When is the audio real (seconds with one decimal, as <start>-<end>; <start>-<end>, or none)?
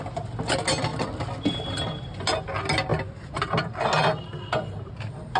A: 0.0-2.9; 3.8-5.4